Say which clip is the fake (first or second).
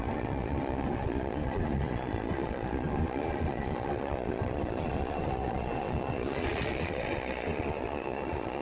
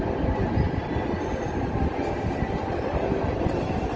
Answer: first